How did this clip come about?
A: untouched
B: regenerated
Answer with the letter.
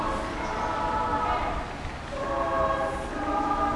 A